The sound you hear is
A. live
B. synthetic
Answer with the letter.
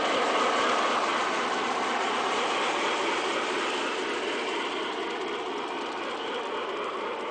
A